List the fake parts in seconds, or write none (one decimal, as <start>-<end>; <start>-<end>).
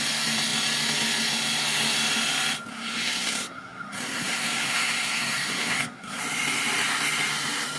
2.7-6.2